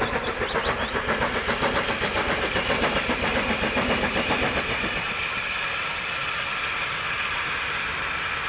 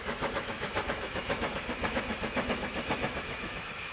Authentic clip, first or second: first